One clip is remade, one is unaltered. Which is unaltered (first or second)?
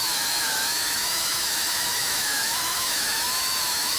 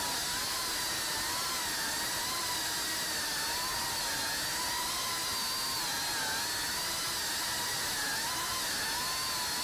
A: second